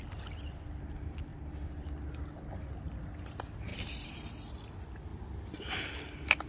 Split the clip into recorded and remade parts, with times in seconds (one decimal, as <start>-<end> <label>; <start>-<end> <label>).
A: 0.0-3.7 recorded; 3.7-4.5 remade; 4.5-5.1 recorded; 5.1-5.8 remade; 5.8-6.5 recorded